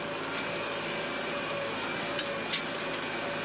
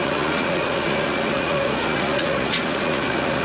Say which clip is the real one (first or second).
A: first